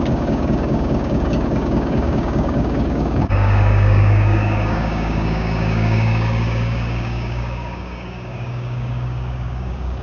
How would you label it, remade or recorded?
remade